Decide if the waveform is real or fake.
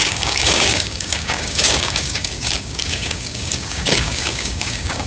fake